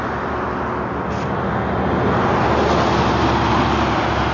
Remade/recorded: recorded